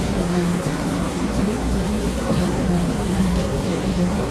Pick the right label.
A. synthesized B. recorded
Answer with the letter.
A